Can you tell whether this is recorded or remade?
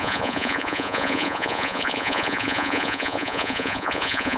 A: remade